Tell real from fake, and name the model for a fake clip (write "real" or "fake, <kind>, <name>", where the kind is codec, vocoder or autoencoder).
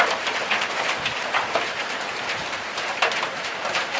fake, vocoder, BigVGAN v2